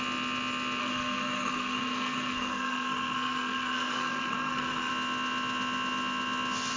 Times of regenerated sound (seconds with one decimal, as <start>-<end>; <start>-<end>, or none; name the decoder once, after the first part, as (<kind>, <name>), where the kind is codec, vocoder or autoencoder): 0.8-4.9 (codec, SNAC)